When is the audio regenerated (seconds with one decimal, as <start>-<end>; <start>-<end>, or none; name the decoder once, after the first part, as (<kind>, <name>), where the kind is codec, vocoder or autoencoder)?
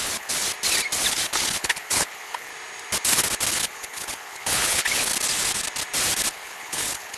0.0-0.4 (codec, HILCodec); 1.1-2.5; 3.5-5.1; 6.3-7.2